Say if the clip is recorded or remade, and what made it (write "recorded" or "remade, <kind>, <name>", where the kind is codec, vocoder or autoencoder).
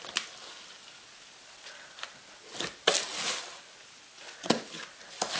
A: recorded